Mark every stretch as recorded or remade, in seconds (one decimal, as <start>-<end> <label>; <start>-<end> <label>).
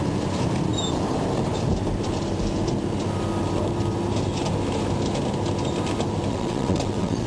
0.0-6.3 recorded; 6.3-7.3 remade